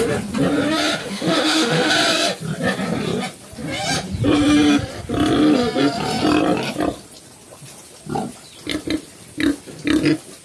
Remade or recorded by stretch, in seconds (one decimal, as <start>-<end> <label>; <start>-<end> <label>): 0.0-1.0 recorded; 1.0-1.9 remade; 1.9-10.4 recorded